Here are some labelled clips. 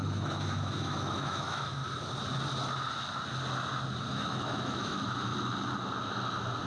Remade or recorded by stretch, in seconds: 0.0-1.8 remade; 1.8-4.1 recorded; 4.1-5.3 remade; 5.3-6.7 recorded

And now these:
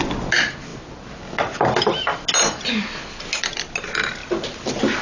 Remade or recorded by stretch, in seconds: 0.0-5.0 recorded

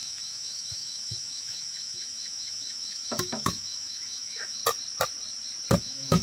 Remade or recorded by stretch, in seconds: 0.0-4.6 remade; 4.6-5.8 recorded; 5.8-6.2 remade

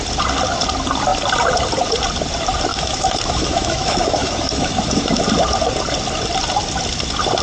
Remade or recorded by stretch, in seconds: 0.0-2.7 recorded; 2.7-5.2 remade; 5.2-7.4 recorded

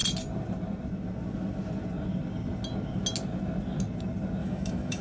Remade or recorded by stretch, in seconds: 0.0-4.4 recorded; 4.4-5.0 remade